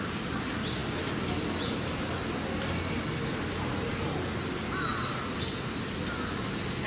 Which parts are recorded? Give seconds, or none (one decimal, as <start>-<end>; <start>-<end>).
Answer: 0.0-6.9